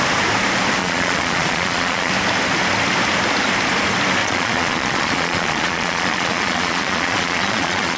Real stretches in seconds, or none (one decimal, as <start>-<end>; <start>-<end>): 0.0-0.8; 2.1-4.2